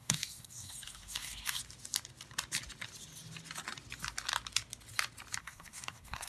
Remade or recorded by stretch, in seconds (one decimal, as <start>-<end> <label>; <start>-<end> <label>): 0.0-1.6 remade; 1.6-5.4 recorded; 5.4-6.3 remade